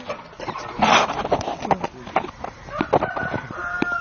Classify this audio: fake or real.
real